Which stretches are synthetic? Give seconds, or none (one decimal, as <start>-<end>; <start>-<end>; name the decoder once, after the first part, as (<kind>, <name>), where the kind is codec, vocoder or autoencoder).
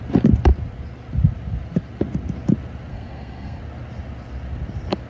2.9-3.6 (codec, SNAC)